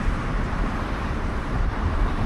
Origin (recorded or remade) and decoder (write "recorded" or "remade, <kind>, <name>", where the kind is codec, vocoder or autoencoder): remade, vocoder, BigVGAN v2